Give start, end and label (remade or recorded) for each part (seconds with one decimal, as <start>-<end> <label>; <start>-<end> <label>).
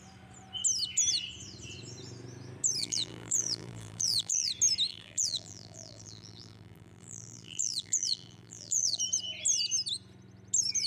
0.0-2.8 recorded; 2.8-4.5 remade; 4.5-4.9 recorded; 4.9-9.0 remade; 9.0-10.9 recorded